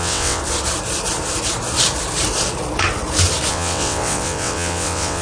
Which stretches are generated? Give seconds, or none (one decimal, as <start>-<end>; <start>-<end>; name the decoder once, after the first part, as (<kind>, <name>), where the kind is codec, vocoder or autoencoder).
0.0-0.4 (vocoder, WaveNeXt); 3.5-5.2